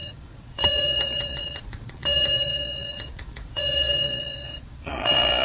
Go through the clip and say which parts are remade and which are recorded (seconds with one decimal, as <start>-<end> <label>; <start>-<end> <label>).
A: 0.0-5.4 remade